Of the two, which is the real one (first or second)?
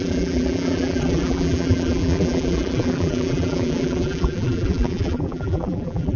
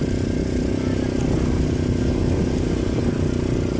second